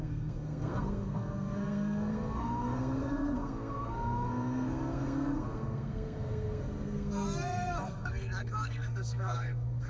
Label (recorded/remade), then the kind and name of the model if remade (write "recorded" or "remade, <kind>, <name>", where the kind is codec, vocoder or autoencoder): remade, codec, SNAC